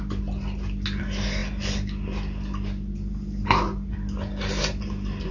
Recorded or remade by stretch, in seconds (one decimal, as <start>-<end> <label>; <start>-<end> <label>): 0.0-5.3 recorded